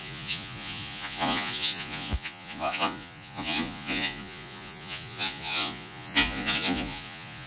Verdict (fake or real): fake